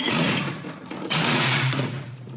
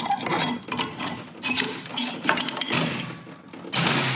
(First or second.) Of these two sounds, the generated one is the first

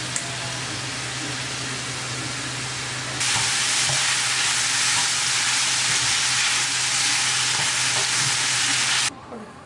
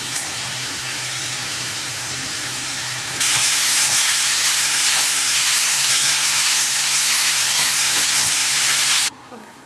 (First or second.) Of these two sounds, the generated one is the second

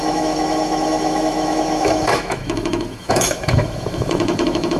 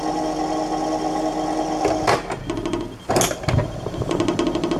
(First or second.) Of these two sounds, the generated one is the first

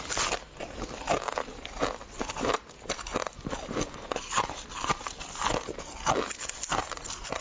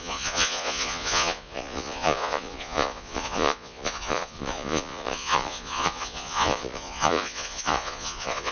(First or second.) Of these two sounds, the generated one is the second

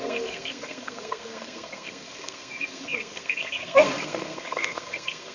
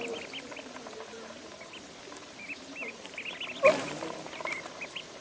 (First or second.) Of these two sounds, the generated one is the first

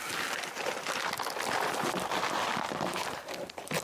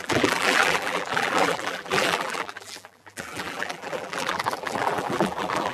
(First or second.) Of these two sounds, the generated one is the second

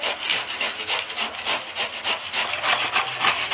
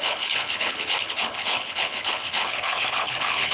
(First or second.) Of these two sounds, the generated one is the second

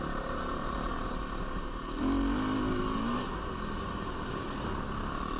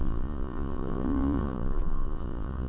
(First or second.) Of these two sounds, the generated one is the second